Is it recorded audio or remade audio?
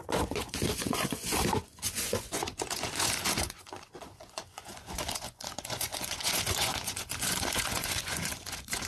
remade